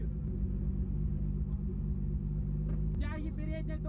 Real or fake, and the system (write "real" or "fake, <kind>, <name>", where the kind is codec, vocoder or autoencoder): real